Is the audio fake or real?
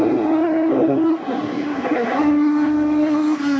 fake